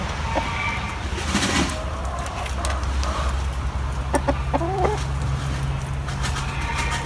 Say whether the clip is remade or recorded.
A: recorded